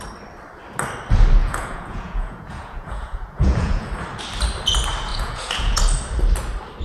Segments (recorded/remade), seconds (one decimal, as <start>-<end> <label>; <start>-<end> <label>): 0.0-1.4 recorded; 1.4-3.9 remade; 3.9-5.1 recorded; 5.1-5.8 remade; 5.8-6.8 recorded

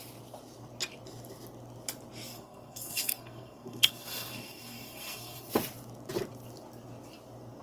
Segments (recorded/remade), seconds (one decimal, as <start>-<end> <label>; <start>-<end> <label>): 0.0-2.3 recorded; 2.3-5.5 remade; 5.5-7.6 recorded

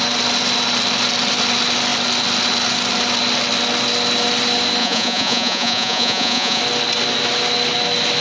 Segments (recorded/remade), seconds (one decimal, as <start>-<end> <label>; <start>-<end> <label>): 0.0-4.8 recorded; 4.8-6.6 remade; 6.6-8.2 recorded

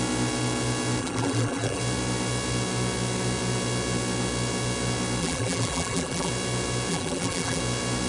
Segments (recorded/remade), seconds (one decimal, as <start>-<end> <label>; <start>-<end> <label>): 0.0-1.0 recorded; 1.0-1.8 remade; 1.8-5.2 recorded; 5.2-6.3 remade; 6.3-6.9 recorded; 6.9-7.6 remade; 7.6-8.1 recorded